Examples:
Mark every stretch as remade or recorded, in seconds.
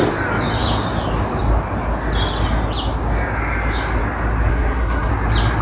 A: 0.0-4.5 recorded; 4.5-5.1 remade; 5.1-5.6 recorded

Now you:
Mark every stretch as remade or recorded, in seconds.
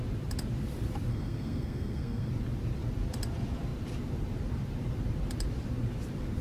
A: 0.0-1.1 recorded; 1.1-2.3 remade; 2.3-6.4 recorded